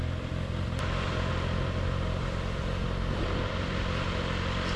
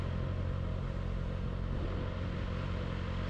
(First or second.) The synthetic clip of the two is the first